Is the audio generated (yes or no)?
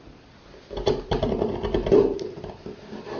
no